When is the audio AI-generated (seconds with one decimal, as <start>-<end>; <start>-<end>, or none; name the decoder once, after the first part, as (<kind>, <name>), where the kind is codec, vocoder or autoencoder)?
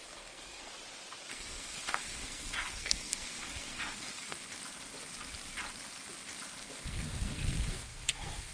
0.0-0.7 (codec, SNAC); 1.3-4.4; 6.6-8.5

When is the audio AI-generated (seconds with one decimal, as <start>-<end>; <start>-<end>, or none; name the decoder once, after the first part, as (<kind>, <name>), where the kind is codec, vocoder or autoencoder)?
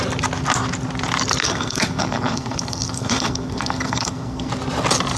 1.4-4.5 (codec, SNAC)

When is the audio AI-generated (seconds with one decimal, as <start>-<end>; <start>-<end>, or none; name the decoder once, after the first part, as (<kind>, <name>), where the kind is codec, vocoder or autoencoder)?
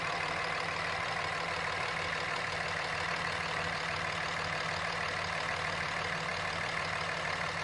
none